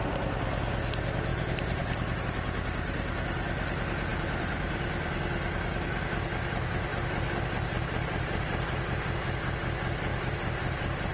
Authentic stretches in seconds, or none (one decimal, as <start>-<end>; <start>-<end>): 0.0-1.3; 2.2-4.1; 5.2-6.9; 9.0-10.1

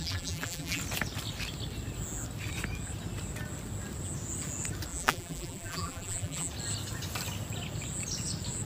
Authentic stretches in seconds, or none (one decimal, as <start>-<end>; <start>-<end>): 0.8-4.9; 6.5-8.7

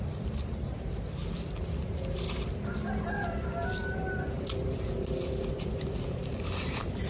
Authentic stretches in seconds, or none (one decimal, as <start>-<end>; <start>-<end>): 1.2-5.5

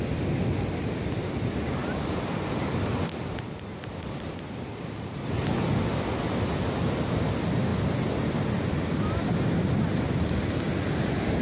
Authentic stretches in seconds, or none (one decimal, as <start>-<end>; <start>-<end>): 0.0-1.8; 5.3-11.4

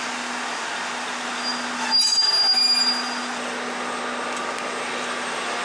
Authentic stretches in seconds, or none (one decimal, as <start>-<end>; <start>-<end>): 0.0-5.6

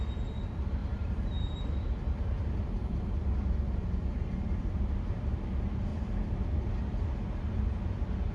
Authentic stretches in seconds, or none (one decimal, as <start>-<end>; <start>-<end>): 0.0-0.8; 5.3-5.9; 6.7-8.3